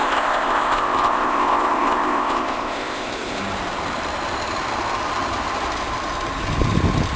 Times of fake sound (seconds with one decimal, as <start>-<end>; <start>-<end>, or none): 0.0-3.4